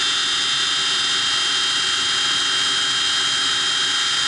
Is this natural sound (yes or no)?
yes